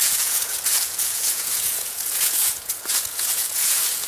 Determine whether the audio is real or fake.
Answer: fake